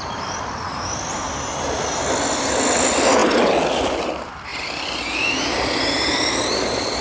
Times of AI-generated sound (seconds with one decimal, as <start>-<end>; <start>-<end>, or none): 0.0-3.2; 4.0-7.0